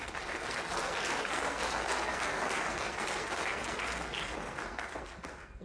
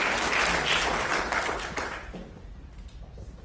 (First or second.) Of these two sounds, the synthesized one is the first